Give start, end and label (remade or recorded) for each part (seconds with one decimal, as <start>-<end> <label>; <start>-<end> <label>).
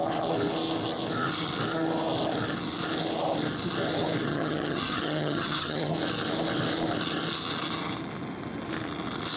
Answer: 0.0-4.3 recorded; 4.3-5.9 remade; 5.9-9.4 recorded